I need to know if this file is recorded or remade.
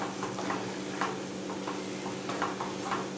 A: recorded